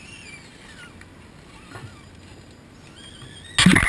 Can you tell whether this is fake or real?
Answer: real